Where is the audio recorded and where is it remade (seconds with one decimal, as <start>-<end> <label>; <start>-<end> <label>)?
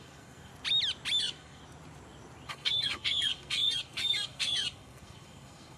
0.0-0.5 remade; 0.5-1.2 recorded; 1.2-1.6 remade; 1.6-2.5 recorded; 2.5-5.8 remade